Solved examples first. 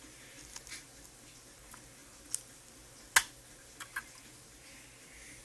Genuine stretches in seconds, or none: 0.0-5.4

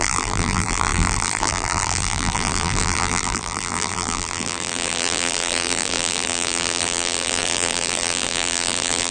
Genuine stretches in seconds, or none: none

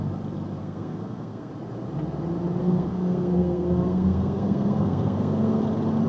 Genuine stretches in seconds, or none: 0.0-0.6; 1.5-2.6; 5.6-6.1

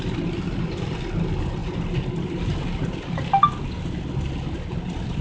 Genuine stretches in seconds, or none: 0.0-5.2